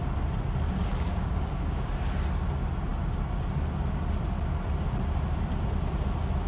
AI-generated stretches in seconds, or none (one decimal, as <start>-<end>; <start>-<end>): 0.9-1.9